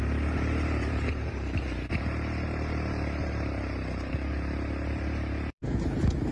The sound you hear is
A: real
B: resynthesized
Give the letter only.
B